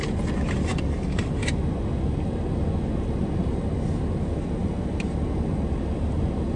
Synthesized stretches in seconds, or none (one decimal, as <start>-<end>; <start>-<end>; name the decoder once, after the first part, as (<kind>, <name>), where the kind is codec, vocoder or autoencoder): 0.7-1.3 (codec, DAC)